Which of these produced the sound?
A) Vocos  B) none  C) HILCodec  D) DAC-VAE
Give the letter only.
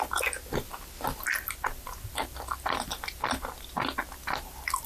B